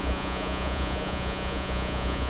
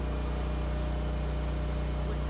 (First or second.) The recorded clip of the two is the second